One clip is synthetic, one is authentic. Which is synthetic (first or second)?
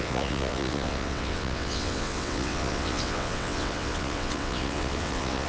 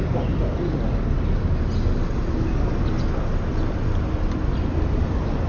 first